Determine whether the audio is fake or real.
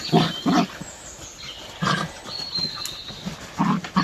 real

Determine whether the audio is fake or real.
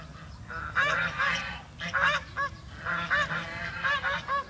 real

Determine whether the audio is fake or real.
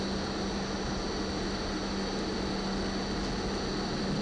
real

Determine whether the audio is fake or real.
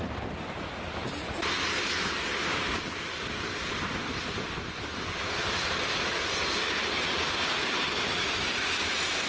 fake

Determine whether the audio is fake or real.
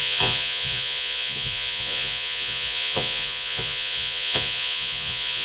fake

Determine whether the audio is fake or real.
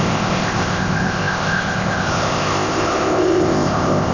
fake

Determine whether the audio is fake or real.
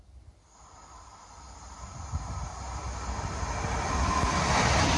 real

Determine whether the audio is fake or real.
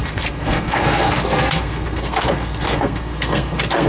fake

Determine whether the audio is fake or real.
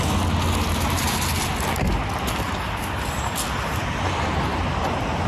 real